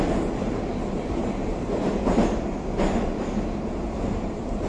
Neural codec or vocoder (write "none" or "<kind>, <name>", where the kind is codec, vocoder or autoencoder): none